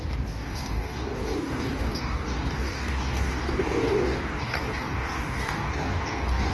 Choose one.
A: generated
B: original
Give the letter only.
A